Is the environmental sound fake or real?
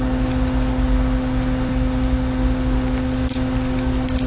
real